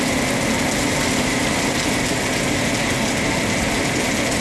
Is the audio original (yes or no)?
yes